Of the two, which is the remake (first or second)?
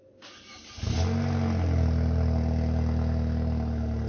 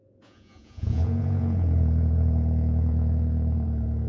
second